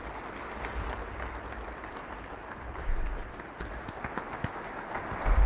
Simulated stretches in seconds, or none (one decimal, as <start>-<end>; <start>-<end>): 1.9-3.2; 4.7-5.5